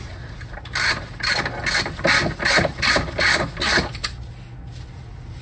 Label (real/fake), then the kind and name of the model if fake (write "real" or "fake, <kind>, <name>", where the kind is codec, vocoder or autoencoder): real